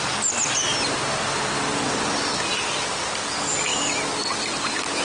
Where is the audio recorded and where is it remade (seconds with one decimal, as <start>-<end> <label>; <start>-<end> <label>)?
0.0-5.0 recorded